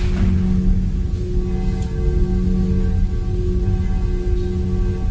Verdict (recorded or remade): recorded